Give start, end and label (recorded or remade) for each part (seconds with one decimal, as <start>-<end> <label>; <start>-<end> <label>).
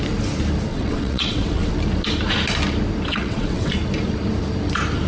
0.0-0.7 recorded; 0.7-1.7 remade; 1.7-3.1 recorded; 3.1-3.7 remade; 3.7-5.1 recorded